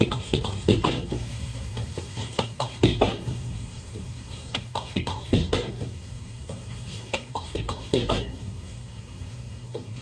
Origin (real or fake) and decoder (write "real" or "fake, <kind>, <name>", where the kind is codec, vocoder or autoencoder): fake, codec, SNAC